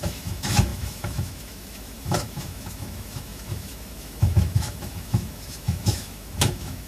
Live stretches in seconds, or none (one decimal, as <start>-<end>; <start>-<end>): none

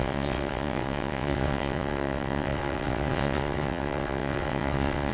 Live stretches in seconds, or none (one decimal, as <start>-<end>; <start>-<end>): none

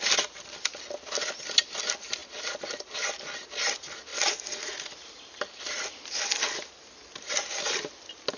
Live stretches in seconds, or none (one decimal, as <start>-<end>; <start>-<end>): 0.0-8.4

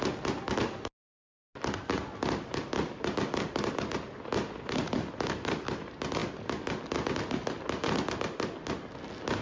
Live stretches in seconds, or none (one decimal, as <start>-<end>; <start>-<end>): 0.0-9.4

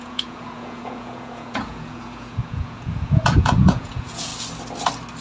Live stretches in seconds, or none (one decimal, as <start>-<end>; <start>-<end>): 4.3-5.2